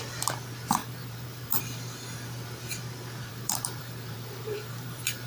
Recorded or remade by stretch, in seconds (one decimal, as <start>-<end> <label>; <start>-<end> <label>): 0.0-0.8 recorded; 0.8-1.6 remade; 1.6-3.3 recorded; 3.3-5.3 remade